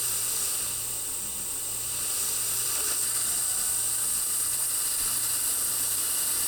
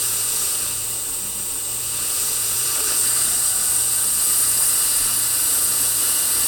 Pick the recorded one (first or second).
first